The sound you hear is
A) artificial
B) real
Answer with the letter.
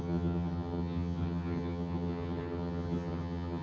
A